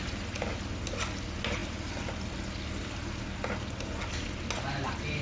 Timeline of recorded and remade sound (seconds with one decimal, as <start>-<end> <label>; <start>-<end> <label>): 0.0-5.2 recorded